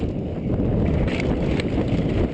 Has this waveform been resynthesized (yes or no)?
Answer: no